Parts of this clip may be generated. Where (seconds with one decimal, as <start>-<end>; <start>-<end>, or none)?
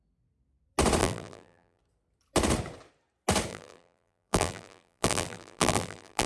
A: 1.0-1.8; 3.5-6.3